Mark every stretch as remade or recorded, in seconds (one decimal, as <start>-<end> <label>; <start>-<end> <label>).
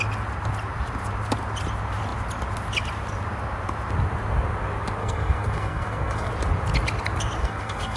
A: 0.0-5.0 recorded; 5.0-6.3 remade; 6.3-7.4 recorded; 7.4-8.0 remade